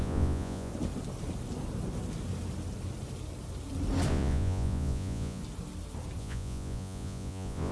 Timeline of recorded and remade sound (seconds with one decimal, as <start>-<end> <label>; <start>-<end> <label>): 0.0-0.7 remade; 0.7-4.1 recorded; 4.1-5.4 remade; 5.4-6.2 recorded; 6.2-7.7 remade